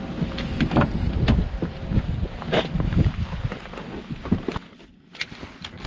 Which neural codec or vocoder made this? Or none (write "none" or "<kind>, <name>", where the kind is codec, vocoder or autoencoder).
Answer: none